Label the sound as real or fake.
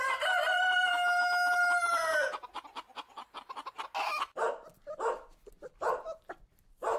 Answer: real